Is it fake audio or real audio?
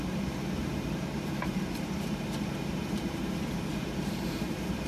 fake